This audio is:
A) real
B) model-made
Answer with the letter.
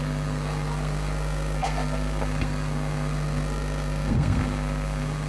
B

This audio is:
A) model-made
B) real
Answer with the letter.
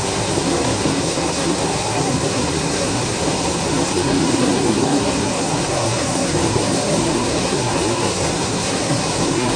A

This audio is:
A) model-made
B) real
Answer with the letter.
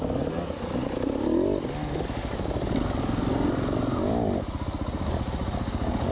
B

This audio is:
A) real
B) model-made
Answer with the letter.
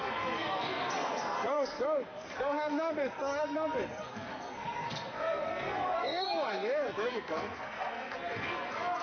B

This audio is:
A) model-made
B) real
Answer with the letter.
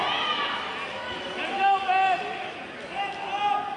B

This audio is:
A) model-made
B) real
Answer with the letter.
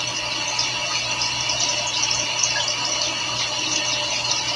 B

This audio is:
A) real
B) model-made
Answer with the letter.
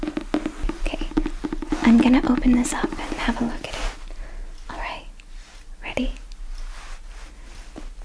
A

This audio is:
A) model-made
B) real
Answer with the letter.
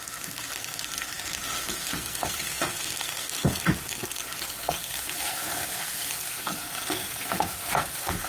A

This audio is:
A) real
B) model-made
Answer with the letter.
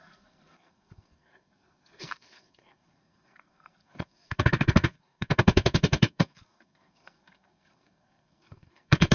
B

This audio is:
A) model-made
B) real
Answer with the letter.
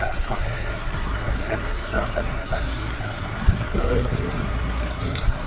A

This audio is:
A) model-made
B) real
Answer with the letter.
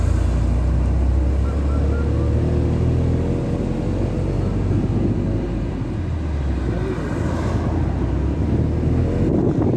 B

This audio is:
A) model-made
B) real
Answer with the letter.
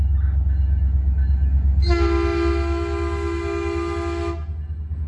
B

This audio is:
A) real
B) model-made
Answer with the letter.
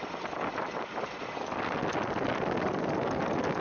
A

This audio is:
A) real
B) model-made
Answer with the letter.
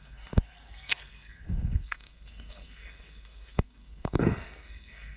B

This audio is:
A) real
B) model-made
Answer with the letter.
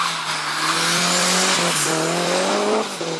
A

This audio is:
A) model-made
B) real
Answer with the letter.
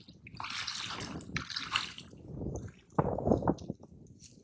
B